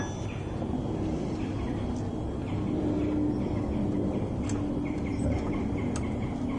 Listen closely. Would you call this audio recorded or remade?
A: recorded